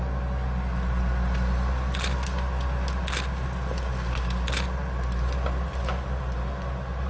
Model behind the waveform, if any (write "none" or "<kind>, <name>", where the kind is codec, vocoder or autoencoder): none